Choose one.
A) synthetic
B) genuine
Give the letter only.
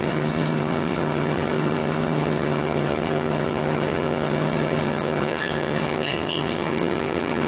A